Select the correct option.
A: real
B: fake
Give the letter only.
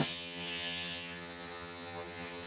B